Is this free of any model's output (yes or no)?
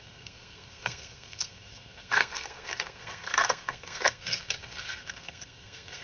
no